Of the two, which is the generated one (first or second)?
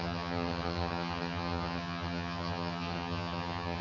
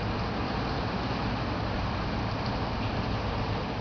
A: first